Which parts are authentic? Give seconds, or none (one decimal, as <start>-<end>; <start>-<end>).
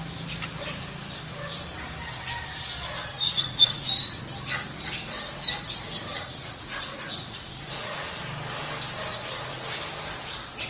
0.0-3.1; 4.2-6.1; 8.2-9.1; 9.7-10.7